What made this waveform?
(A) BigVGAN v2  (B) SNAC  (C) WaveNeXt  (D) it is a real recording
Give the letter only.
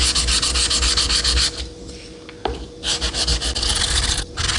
D